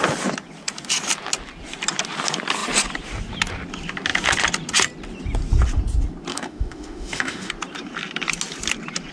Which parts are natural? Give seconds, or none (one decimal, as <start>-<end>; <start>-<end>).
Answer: 0.0-6.3; 7.5-9.1